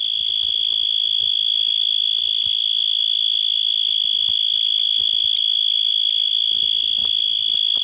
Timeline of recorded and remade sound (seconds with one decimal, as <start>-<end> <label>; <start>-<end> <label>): 0.0-7.8 remade